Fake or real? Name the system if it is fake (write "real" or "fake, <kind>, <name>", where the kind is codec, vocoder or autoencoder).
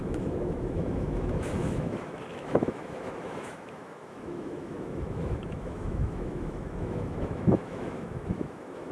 fake, autoencoder, DAC-VAE